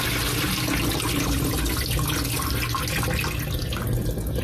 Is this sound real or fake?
real